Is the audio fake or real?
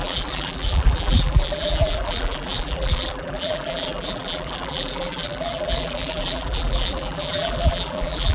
fake